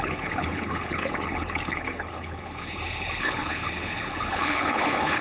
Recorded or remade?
remade